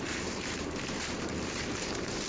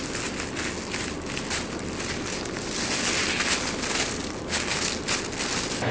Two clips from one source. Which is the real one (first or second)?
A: second